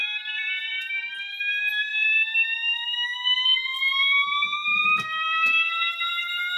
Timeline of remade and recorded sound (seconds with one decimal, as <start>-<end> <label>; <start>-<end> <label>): 0.0-1.4 remade; 1.4-6.6 recorded